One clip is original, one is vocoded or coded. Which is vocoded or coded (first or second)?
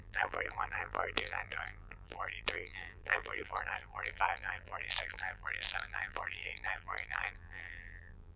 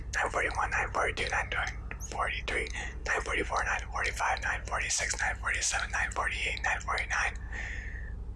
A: first